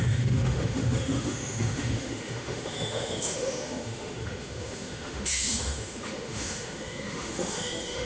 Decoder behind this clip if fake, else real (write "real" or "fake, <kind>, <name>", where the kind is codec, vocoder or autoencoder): fake, autoencoder, DAC-VAE